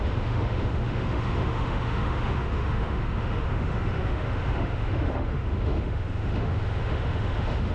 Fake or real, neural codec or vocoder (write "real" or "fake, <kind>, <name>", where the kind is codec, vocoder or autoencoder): fake, autoencoder, DAC-VAE